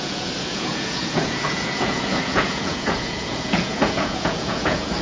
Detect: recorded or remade remade